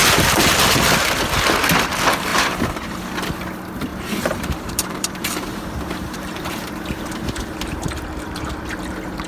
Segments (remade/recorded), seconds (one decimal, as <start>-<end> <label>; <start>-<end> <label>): 0.0-2.3 recorded; 2.3-3.0 remade; 3.0-3.9 recorded; 3.9-8.4 remade; 8.4-9.3 recorded